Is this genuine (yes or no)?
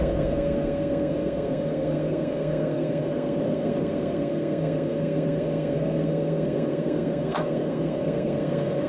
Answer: no